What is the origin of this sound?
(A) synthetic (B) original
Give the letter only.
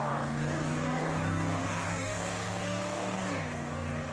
A